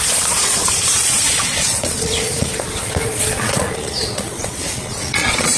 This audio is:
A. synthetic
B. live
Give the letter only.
A